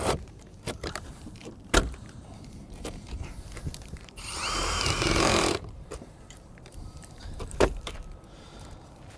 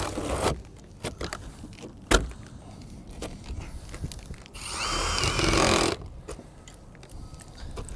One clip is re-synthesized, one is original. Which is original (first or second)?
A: second